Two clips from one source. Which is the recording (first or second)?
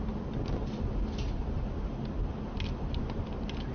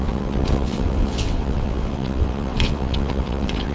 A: first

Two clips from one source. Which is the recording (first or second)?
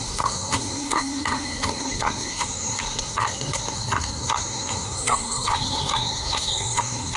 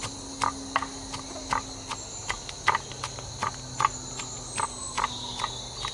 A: second